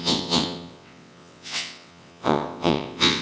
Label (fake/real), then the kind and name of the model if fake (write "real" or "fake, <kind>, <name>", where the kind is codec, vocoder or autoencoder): fake, vocoder, WaveNeXt